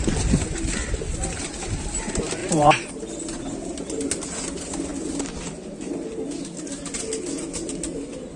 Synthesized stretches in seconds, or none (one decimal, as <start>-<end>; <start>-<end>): 2.4-2.9